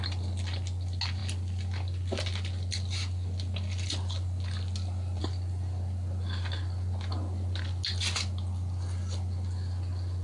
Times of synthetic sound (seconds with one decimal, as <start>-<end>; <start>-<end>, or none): none